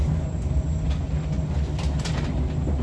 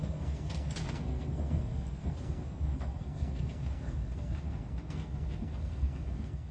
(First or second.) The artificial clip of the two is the second